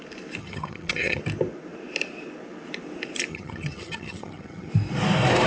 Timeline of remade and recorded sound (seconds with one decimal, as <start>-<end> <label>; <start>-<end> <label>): 0.0-0.4 recorded; 0.4-1.2 remade; 1.2-3.3 recorded; 3.3-4.7 remade; 4.7-5.5 recorded